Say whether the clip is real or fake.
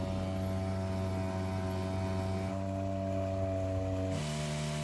real